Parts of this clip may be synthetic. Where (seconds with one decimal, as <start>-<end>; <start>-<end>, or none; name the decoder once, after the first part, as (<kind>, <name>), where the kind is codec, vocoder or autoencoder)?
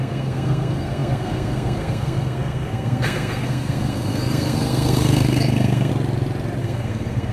0.0-5.9 (codec, SNAC); 6.6-7.3